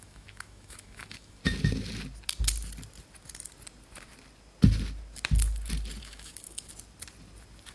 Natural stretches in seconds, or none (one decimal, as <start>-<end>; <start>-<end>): 1.4-6.0; 6.7-7.7